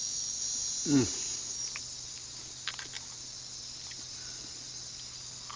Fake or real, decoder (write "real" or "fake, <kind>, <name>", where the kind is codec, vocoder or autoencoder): real